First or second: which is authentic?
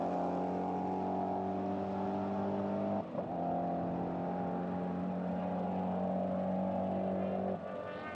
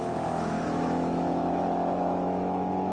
first